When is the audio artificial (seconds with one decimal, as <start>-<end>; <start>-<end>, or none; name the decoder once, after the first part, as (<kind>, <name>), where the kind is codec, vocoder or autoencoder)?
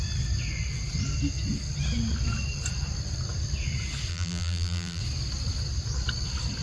4.1-5.0 (vocoder, BigVGAN v2)